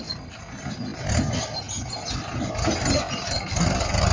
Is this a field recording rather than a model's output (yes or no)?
yes